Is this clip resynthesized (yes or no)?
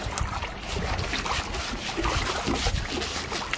no